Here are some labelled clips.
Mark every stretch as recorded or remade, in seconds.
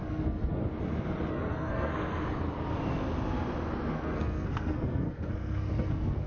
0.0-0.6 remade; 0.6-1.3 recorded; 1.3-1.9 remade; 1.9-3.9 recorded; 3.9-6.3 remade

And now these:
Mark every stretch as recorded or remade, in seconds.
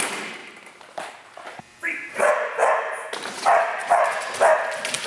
0.0-5.1 recorded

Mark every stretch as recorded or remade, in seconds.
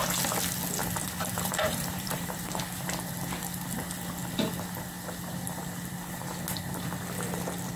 0.0-0.8 recorded; 0.8-2.4 remade; 2.4-7.8 recorded